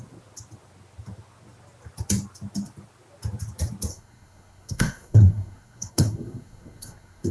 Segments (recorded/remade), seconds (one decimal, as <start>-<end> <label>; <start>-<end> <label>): 0.0-3.9 recorded; 3.9-7.3 remade